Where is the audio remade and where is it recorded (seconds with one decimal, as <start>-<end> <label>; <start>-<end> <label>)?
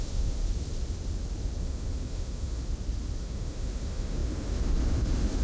0.0-0.4 remade; 0.4-1.6 recorded; 1.6-2.6 remade; 2.6-3.2 recorded; 3.2-5.4 remade